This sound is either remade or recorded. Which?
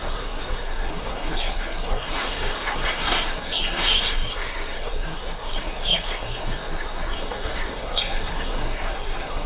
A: remade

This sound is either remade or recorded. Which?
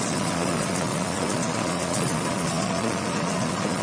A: remade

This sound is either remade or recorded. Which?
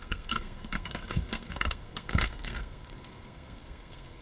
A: remade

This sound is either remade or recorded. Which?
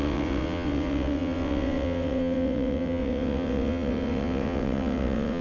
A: remade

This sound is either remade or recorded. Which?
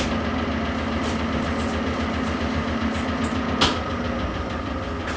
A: recorded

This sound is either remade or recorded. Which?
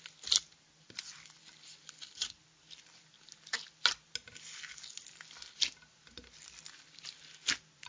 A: recorded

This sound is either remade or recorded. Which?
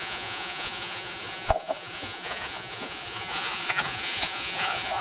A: remade